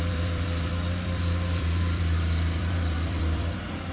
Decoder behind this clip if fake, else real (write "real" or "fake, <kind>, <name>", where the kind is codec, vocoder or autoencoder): fake, vocoder, BigVGAN v2